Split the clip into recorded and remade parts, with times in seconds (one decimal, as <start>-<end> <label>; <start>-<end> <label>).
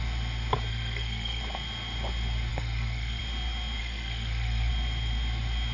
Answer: 0.0-0.7 recorded; 0.7-1.4 remade; 1.4-2.5 recorded; 2.5-3.2 remade; 3.2-3.8 recorded; 3.8-4.7 remade; 4.7-5.7 recorded